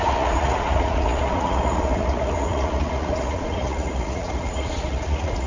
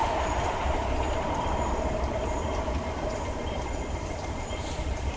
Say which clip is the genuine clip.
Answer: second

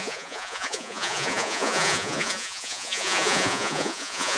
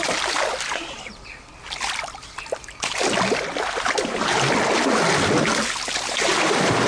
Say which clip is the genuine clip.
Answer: second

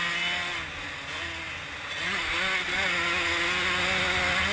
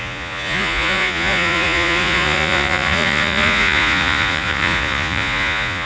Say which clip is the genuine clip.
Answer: first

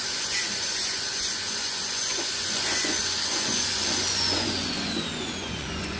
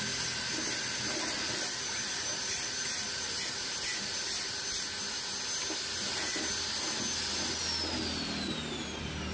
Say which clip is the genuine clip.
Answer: second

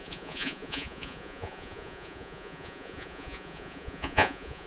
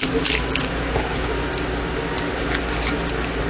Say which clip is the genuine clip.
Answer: second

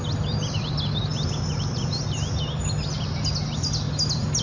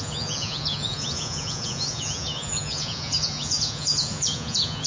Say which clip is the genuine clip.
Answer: first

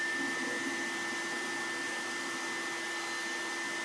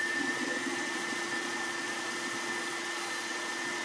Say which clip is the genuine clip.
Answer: first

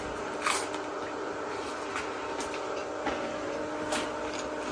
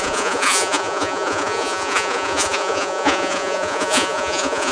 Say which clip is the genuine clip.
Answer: first